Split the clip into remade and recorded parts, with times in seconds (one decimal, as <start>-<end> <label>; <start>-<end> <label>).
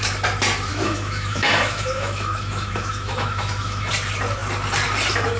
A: 0.0-0.7 recorded; 0.7-3.9 remade; 3.9-5.4 recorded